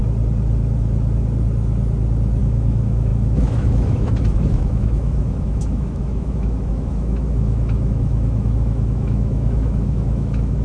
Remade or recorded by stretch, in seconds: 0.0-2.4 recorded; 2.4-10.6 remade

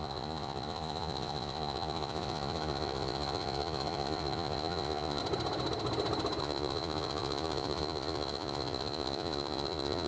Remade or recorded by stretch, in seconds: 0.0-5.2 remade; 5.2-6.4 recorded; 6.4-10.1 remade

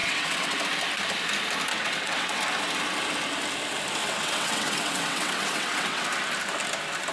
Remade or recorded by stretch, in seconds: 0.0-0.6 remade; 0.6-1.7 recorded; 1.7-2.4 remade; 2.4-4.0 recorded; 4.0-6.0 remade; 6.0-7.1 recorded

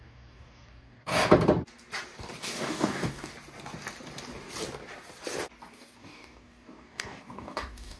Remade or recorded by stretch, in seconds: 0.0-1.1 remade; 1.1-2.4 recorded; 2.4-3.3 remade; 3.3-5.7 recorded; 5.7-8.0 remade

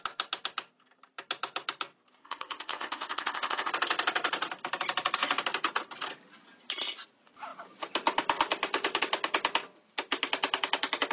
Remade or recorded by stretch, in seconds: 0.0-2.2 recorded; 2.2-3.7 remade; 3.7-11.1 recorded

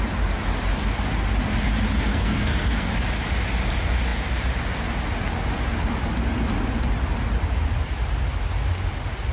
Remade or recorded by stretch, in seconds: 0.0-2.1 recorded; 2.1-2.9 remade; 2.9-9.3 recorded